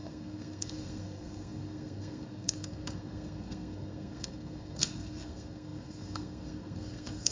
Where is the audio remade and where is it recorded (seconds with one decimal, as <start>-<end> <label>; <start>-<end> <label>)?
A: 0.0-7.3 remade